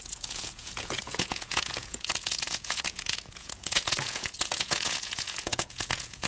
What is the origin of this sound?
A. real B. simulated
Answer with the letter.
B